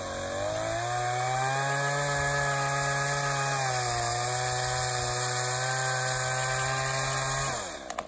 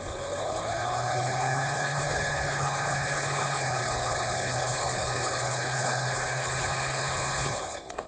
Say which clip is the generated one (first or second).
second